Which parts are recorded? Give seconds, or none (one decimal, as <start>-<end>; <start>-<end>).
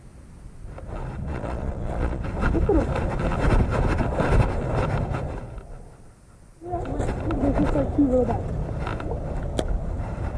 0.0-1.3; 2.2-10.4